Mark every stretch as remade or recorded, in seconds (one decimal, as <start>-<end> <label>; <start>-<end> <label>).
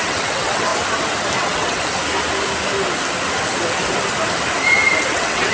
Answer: 0.0-0.7 remade; 0.7-1.4 recorded; 1.4-1.8 remade; 1.8-5.1 recorded; 5.1-5.5 remade